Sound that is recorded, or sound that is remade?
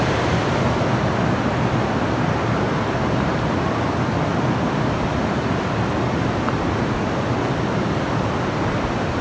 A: recorded